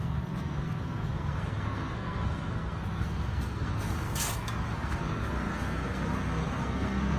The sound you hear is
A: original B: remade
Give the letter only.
B